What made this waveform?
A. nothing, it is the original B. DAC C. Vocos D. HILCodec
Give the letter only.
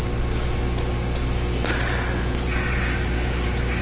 A